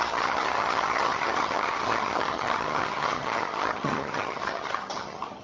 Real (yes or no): no